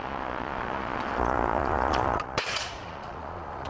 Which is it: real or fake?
fake